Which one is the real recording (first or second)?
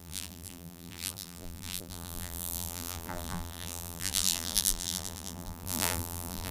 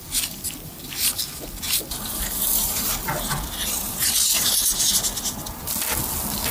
second